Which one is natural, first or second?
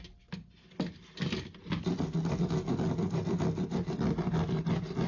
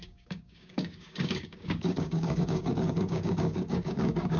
first